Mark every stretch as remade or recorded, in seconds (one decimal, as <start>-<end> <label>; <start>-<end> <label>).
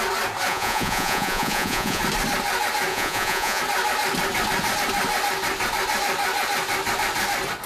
0.0-0.5 recorded; 0.5-2.0 remade; 2.0-2.9 recorded; 2.9-3.6 remade; 3.6-7.7 recorded